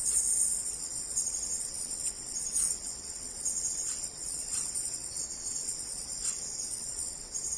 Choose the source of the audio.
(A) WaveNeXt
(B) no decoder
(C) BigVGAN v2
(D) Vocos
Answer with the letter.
A